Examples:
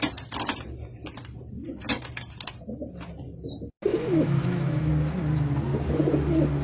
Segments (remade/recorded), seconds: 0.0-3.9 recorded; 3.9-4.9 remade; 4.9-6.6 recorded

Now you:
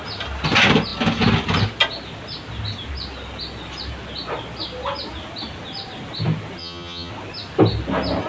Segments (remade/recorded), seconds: 0.0-6.6 recorded; 6.6-7.1 remade; 7.1-8.3 recorded

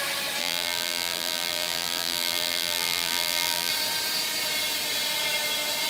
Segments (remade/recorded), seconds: 0.0-0.4 recorded; 0.4-3.7 remade; 3.7-5.9 recorded

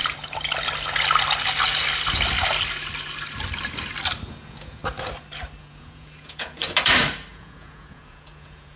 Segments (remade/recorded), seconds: 0.0-4.3 recorded; 4.3-4.8 remade; 4.8-5.6 recorded; 5.6-6.6 remade; 6.6-7.3 recorded; 7.3-8.8 remade

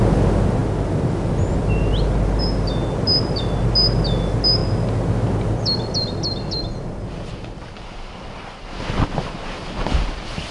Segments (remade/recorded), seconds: 0.0-10.5 recorded